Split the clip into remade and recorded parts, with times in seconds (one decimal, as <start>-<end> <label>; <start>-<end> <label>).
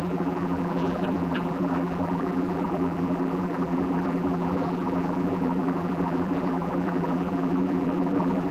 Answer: 0.0-8.5 remade